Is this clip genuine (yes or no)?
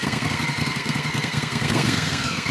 no